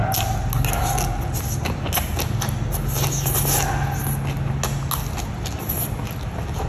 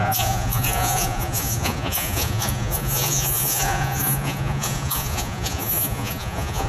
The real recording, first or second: first